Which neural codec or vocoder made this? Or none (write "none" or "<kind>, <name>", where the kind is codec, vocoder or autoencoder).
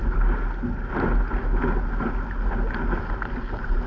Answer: none